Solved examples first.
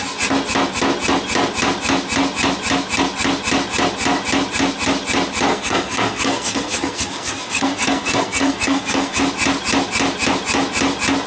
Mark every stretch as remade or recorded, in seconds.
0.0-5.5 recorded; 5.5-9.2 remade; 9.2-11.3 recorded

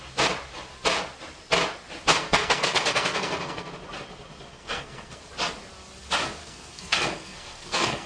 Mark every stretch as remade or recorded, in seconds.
0.0-2.1 recorded; 2.1-3.7 remade; 3.7-4.5 recorded; 4.5-5.3 remade; 5.3-6.4 recorded; 6.4-8.1 remade

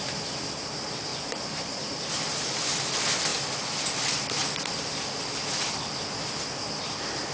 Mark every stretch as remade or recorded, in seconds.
0.0-1.1 recorded; 1.1-1.8 remade; 1.8-7.3 recorded

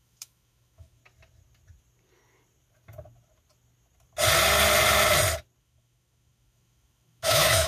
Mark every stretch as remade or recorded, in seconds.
0.0-1.0 remade; 1.0-5.6 recorded; 5.6-7.7 remade

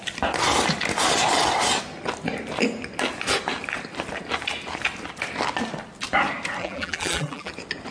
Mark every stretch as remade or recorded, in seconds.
0.0-6.6 recorded; 6.6-7.5 remade; 7.5-7.9 recorded